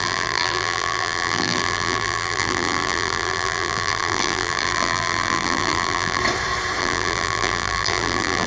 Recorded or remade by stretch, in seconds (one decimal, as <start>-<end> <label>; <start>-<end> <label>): 0.0-6.2 remade; 6.2-6.8 recorded; 6.8-8.5 remade